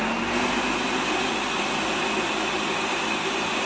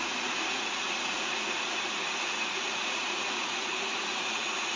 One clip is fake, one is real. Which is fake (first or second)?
second